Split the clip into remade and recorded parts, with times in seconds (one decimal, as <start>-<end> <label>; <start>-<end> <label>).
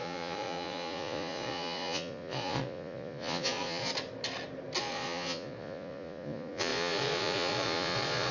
0.0-3.9 remade; 3.9-4.8 recorded; 4.8-8.3 remade